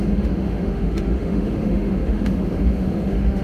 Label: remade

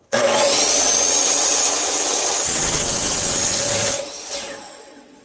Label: remade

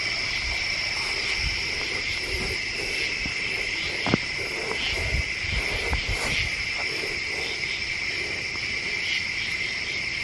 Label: recorded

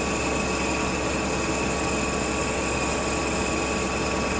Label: recorded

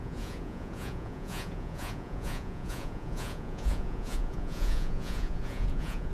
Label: remade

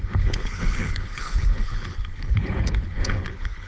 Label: remade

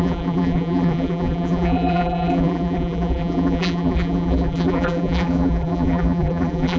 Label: remade